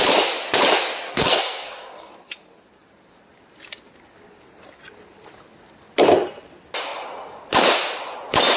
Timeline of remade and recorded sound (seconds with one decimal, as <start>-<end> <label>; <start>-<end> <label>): 0.0-1.1 recorded; 1.1-2.1 remade; 2.1-8.6 recorded